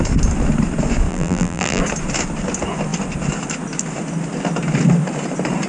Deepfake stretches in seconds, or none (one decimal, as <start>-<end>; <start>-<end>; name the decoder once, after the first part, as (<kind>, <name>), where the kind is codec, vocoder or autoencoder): 1.1-1.8 (vocoder, BigVGAN v2)

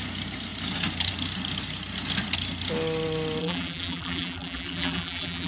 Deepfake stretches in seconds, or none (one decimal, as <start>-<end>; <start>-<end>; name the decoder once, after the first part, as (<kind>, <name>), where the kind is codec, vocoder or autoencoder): 3.4-5.5 (vocoder, BigVGAN v2)

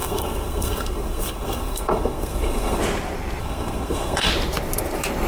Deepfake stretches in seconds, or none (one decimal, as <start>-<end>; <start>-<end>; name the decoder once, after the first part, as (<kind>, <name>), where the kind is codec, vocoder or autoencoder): 0.0-2.8 (codec, SNAC); 3.4-4.3

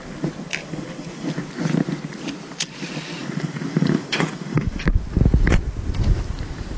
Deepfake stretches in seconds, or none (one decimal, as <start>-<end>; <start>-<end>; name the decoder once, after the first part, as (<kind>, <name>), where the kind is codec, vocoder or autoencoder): 0.6-1.4 (vocoder, BigVGAN v2); 3.2-4.8

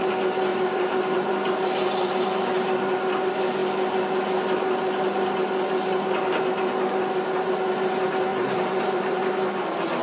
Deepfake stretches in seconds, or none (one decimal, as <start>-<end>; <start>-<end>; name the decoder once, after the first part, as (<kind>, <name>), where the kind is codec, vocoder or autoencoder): 0.5-1.3 (vocoder, BigVGAN v2); 2.0-2.6; 8.3-9.2

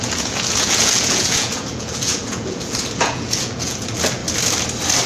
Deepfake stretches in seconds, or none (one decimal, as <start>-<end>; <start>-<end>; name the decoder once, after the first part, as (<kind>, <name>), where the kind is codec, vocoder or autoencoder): 0.0-4.2 (vocoder, Vocos)